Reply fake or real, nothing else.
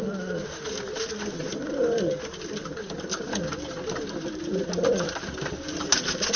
real